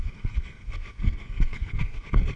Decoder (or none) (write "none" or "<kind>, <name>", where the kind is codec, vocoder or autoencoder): codec, SNAC